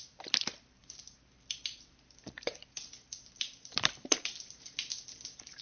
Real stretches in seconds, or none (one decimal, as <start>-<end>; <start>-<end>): 0.0-0.8; 4.2-5.6